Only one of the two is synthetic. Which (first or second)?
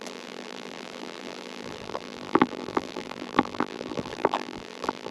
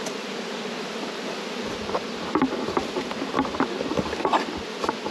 first